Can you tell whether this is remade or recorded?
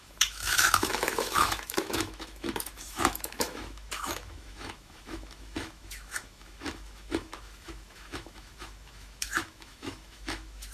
remade